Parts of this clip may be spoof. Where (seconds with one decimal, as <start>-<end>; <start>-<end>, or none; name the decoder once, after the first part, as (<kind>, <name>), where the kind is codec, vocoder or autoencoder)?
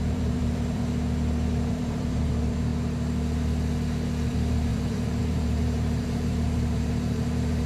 0.0-0.8 (vocoder, BigVGAN v2); 1.7-2.7; 4.3-7.7